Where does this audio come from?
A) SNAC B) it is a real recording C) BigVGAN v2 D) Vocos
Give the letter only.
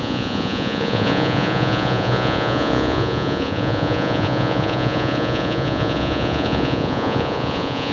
D